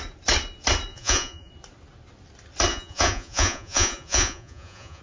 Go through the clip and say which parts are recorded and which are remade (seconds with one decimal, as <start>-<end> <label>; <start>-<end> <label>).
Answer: 0.0-0.9 recorded; 0.9-1.5 remade; 1.5-2.7 recorded; 2.7-5.0 remade